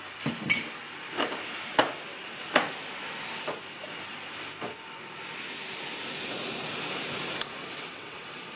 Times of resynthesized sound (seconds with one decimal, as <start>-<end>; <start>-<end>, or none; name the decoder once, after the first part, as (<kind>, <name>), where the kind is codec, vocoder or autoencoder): 7.6-8.6 (vocoder, WaveNeXt)